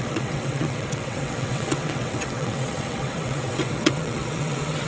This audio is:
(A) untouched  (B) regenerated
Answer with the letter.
B